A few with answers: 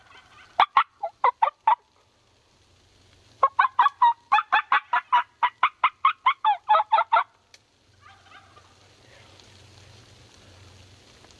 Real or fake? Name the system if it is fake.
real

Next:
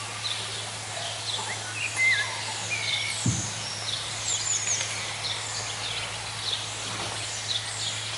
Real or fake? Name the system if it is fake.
real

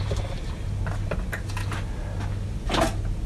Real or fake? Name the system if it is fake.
real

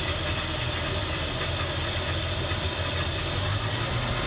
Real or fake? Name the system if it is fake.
real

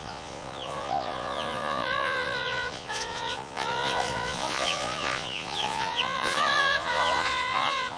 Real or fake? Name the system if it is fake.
fake, vocoder, Vocos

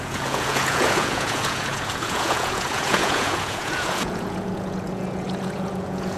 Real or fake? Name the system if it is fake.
fake, vocoder, Vocos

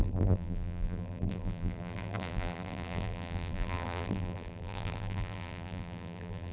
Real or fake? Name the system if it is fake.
fake, vocoder, BigVGAN v2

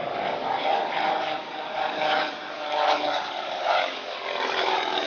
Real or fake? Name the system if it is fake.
fake, codec, DAC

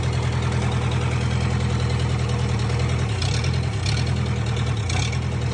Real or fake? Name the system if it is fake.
real